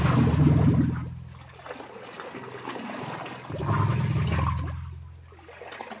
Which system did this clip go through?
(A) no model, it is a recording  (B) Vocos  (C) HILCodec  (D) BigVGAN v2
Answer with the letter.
A